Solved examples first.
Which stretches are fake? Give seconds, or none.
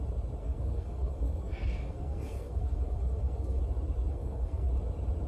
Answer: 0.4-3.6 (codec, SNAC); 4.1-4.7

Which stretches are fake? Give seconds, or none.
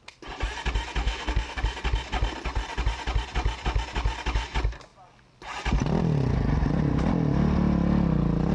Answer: 1.0-1.6 (codec, SNAC)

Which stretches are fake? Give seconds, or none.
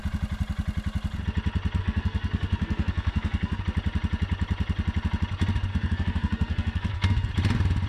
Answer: 1.8-3.6 (codec, SNAC); 5.7-7.3